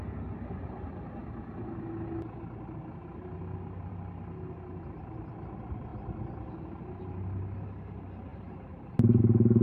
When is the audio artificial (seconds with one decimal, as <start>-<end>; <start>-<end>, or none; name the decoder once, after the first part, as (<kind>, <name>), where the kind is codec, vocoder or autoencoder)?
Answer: 8.3-9.2 (vocoder, BigVGAN v2)